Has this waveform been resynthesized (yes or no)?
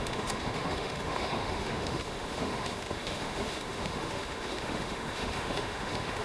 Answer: yes